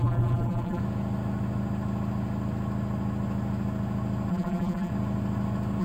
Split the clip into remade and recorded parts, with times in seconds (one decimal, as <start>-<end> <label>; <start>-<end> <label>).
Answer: 0.0-0.8 remade; 0.8-4.3 recorded; 4.3-4.9 remade; 4.9-5.8 recorded